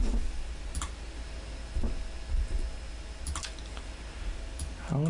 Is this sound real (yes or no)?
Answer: yes